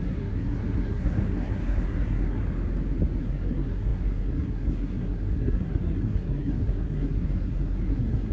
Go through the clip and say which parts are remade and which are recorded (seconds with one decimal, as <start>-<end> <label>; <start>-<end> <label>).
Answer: 0.0-2.4 remade; 2.4-3.2 recorded; 3.2-8.3 remade